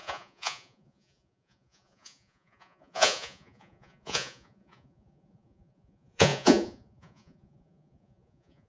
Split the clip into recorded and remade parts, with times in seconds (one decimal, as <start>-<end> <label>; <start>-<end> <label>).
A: 0.0-8.7 remade

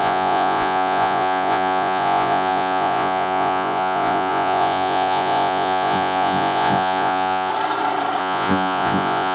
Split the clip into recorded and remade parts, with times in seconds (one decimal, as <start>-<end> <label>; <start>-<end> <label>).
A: 0.0-7.5 remade; 7.5-8.2 recorded; 8.2-9.3 remade

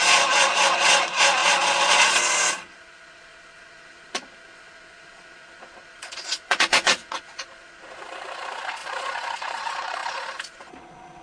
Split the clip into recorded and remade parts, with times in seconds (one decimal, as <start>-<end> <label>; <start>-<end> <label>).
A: 0.0-11.2 remade

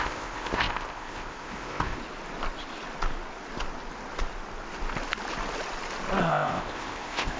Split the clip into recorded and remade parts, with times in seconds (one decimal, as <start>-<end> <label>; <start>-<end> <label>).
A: 0.0-2.0 remade; 2.0-6.3 recorded; 6.3-7.4 remade